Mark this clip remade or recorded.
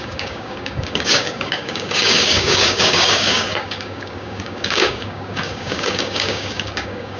remade